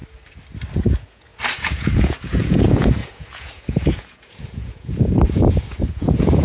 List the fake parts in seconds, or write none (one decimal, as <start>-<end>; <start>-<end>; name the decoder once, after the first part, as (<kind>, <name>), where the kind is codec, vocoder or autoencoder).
0.9-6.4 (vocoder, Vocos)